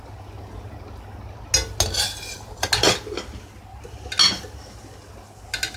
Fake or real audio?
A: real